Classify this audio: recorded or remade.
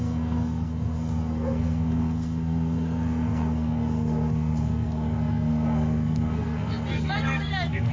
remade